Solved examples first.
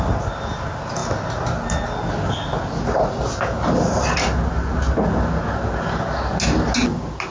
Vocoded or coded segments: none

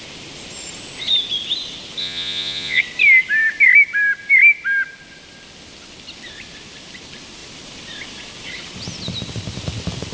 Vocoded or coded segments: 2.0-2.8 (vocoder, Vocos)

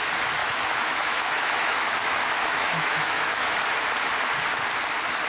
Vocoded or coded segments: 0.4-3.6 (autoencoder, DAC-VAE)